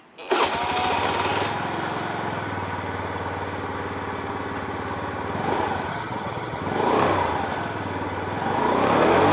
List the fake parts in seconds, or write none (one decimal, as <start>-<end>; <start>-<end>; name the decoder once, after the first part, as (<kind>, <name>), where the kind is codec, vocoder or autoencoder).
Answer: 5.9-6.6 (vocoder, HiFi-GAN)